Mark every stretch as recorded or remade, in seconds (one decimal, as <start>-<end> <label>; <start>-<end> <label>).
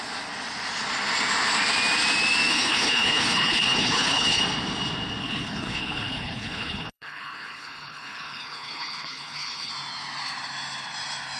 0.0-2.5 recorded; 2.5-4.4 remade; 4.4-5.2 recorded; 5.2-9.7 remade; 9.7-11.4 recorded